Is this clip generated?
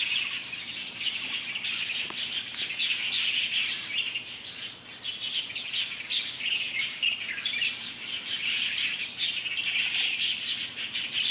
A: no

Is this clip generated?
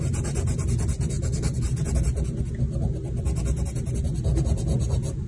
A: no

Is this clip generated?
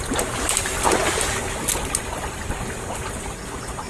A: no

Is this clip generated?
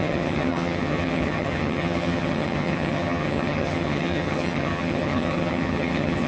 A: yes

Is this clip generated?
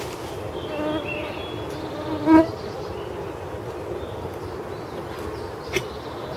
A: no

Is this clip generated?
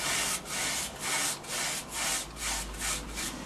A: no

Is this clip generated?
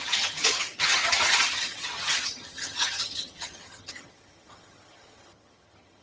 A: yes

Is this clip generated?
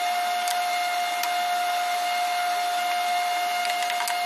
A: no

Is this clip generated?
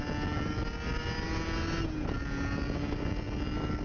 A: no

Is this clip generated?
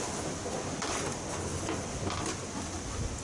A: no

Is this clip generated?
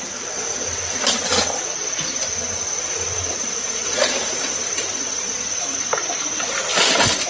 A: no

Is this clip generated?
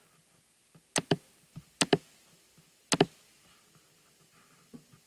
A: no